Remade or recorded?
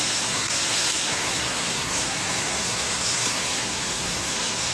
remade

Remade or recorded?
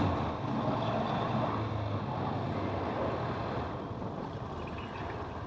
recorded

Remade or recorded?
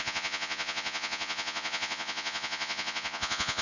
remade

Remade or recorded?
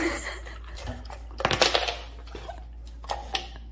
recorded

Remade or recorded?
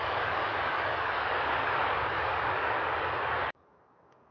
remade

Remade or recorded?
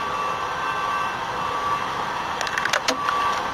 recorded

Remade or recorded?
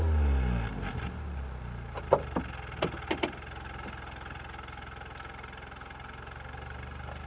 recorded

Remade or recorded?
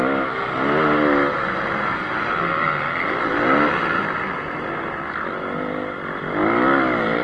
recorded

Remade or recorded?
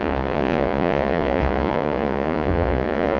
remade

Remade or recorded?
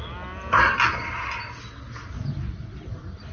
recorded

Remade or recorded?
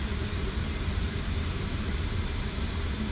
remade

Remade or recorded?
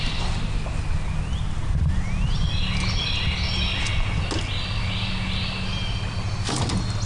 recorded